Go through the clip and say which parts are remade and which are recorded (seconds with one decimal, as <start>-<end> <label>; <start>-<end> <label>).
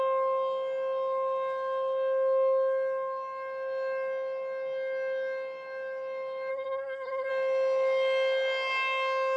0.0-6.5 recorded; 6.5-7.3 remade; 7.3-9.4 recorded